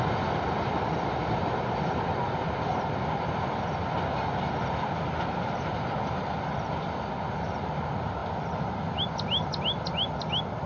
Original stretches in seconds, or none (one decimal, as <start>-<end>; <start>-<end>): 0.0-10.7